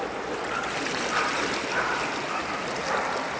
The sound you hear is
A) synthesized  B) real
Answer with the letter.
B